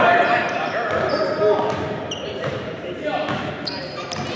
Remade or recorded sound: remade